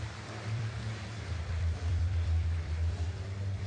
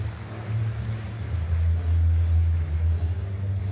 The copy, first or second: first